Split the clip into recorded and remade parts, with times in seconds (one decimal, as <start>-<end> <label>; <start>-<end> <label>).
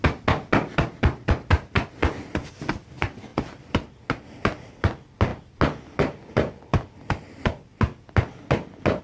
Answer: 0.0-3.3 recorded; 3.3-3.9 remade; 3.9-9.0 recorded